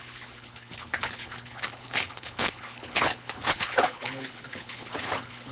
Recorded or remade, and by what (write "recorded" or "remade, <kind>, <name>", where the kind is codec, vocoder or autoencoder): remade, codec, HILCodec